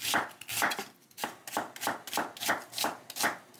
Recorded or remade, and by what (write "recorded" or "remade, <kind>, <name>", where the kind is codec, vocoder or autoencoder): recorded